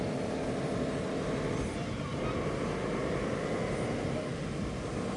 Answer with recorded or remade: recorded